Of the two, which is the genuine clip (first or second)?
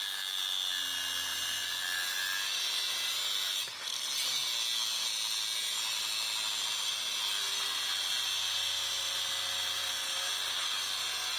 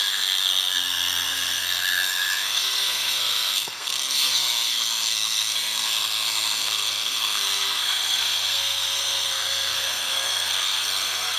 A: first